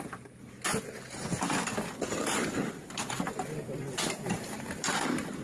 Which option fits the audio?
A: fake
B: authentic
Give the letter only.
B